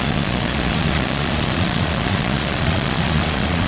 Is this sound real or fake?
fake